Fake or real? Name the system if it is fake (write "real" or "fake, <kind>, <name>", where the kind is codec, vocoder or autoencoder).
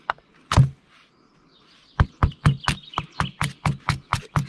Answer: real